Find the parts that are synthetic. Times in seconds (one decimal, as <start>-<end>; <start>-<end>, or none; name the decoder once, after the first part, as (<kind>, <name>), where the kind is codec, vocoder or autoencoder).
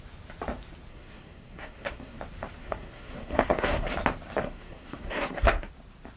0.9-2.2 (codec, SNAC); 2.6-3.9; 4.4-5.7